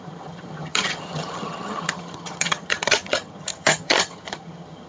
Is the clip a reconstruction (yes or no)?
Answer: yes